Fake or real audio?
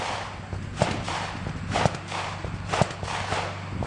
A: real